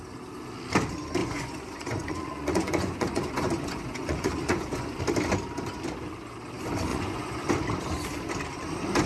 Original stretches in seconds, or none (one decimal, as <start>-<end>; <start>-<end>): 0.0-1.2; 5.0-6.9; 7.5-9.1